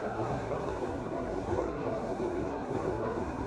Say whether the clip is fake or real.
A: fake